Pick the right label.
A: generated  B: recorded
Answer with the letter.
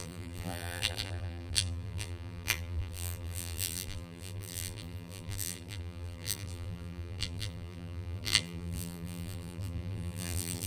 A